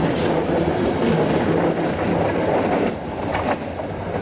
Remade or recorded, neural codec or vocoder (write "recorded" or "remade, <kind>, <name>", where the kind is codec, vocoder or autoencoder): recorded